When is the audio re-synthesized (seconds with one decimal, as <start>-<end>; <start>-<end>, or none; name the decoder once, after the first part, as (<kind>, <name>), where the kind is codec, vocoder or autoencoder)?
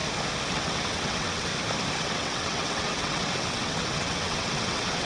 0.5-1.5 (vocoder, WaveNeXt); 2.0-5.1